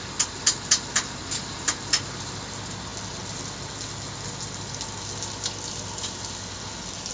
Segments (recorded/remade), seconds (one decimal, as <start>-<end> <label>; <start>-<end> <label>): 0.0-1.2 recorded; 1.2-1.7 remade; 1.7-7.1 recorded